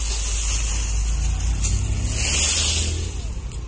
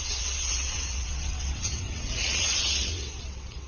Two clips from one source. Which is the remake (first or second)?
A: second